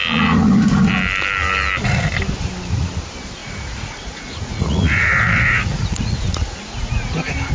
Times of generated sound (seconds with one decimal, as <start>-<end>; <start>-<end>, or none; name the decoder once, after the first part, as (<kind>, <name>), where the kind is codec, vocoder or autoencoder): 3.4-7.1 (vocoder, Vocos)